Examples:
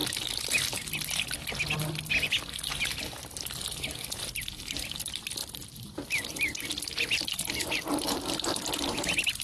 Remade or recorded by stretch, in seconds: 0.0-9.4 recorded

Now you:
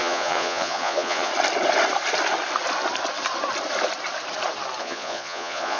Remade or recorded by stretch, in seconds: 0.0-1.3 remade; 1.3-4.8 recorded; 4.8-5.8 remade